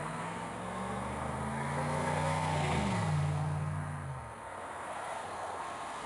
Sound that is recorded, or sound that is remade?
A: remade